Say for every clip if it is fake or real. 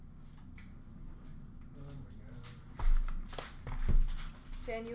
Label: real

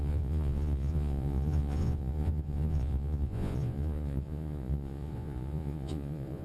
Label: fake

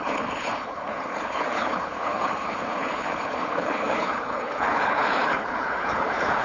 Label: fake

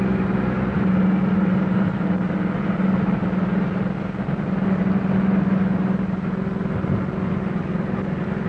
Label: real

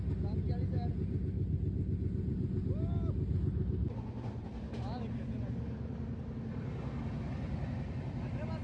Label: real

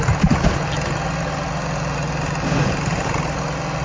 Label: real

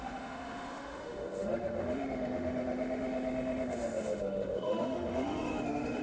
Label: fake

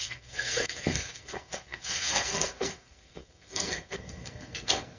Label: fake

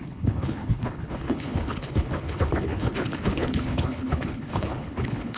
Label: fake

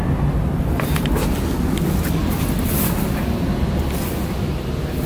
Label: real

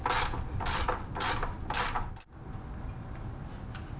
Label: real